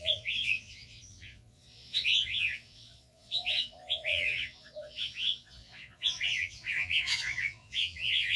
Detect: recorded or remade remade